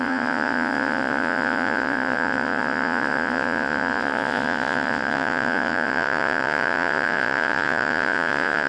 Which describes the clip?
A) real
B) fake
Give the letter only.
B